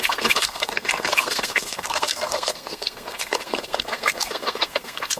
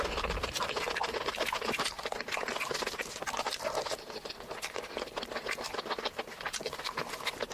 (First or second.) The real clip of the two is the second